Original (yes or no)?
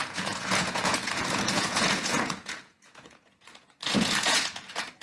no